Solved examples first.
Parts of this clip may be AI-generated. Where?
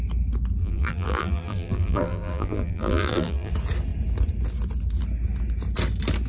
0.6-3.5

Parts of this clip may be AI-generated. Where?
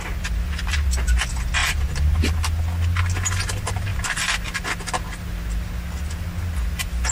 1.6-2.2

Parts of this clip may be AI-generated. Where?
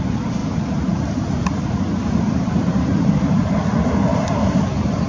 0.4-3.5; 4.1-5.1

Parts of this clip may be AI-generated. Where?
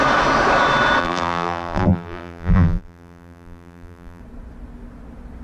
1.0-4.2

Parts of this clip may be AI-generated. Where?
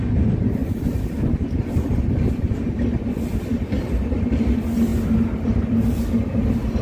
none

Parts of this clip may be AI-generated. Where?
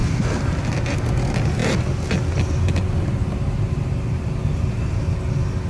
none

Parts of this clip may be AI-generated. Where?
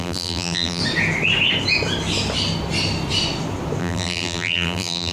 0.0-0.8; 3.8-5.1